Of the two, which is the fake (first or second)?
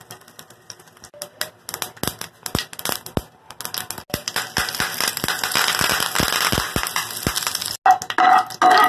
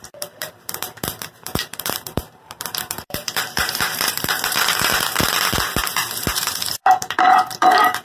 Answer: second